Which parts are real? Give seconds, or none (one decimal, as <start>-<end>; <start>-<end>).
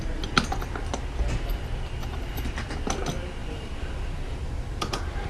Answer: 0.0-2.0; 2.7-3.4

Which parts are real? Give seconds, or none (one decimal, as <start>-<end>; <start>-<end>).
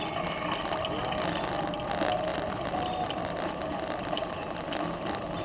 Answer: 0.0-2.3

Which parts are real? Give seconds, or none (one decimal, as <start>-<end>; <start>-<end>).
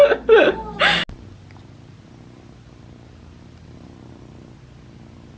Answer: 0.0-5.4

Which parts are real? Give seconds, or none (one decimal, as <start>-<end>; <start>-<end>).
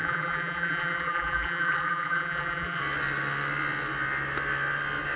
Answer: 2.8-5.2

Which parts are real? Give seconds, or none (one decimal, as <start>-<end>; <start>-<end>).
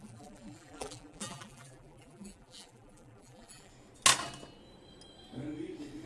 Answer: 3.7-6.1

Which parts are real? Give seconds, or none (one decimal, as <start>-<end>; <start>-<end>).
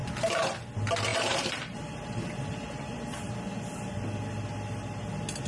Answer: 0.0-1.1; 3.6-5.5